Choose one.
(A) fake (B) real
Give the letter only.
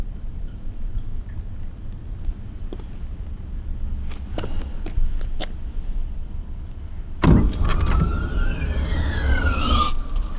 A